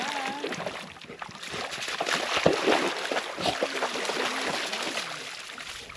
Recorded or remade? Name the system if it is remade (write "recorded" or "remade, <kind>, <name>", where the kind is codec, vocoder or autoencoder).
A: recorded